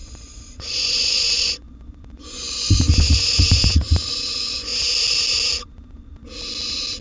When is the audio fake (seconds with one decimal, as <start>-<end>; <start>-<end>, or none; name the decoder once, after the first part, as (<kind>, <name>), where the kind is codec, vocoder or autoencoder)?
0.0-4.7 (vocoder, Vocos)